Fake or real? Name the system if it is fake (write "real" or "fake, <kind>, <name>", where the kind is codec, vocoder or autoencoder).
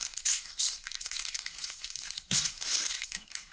fake, codec, SNAC